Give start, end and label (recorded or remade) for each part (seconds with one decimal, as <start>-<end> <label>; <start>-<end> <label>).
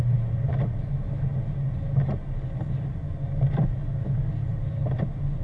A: 0.0-5.4 recorded